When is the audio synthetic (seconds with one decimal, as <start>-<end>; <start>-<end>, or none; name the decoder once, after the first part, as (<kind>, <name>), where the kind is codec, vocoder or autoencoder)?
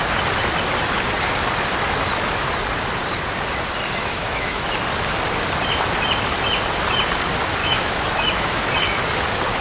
4.0-4.7 (autoencoder, DAC-VAE); 7.6-8.7